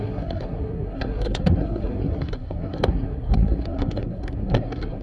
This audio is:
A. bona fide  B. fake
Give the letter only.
B